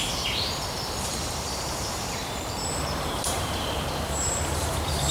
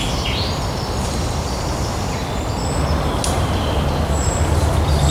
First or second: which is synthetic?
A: first